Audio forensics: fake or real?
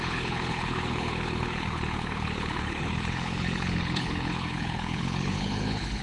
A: fake